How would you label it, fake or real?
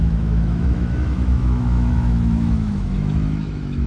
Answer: fake